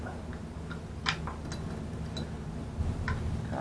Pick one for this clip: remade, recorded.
recorded